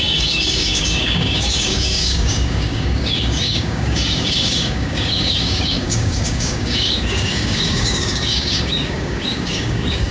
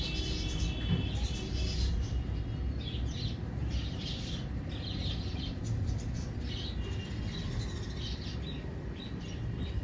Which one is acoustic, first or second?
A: second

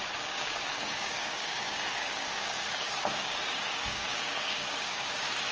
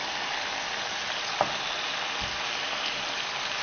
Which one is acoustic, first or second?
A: second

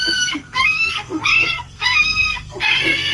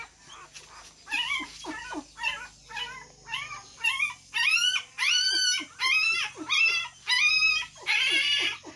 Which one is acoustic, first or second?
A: second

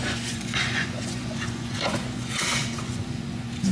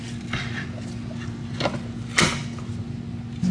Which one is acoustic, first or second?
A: second